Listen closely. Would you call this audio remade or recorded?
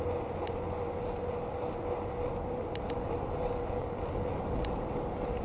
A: recorded